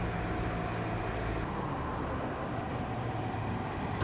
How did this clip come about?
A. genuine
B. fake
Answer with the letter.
A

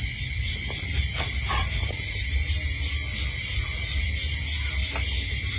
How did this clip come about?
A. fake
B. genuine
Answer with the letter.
B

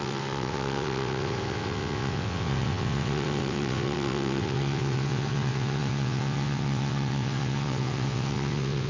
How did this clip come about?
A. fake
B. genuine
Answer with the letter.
A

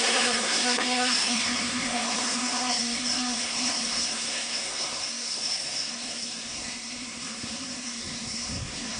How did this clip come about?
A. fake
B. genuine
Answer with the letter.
A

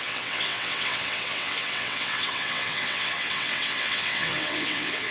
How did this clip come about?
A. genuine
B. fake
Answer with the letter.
B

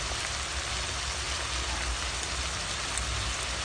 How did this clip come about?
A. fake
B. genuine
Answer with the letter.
B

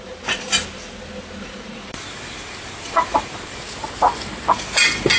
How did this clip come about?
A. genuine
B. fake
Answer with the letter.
A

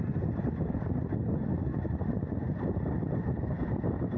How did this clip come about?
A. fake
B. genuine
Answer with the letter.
B